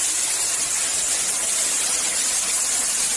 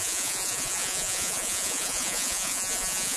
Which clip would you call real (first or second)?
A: first